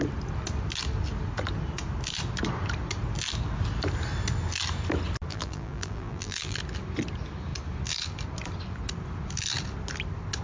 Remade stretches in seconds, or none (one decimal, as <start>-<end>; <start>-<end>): 5.3-6.6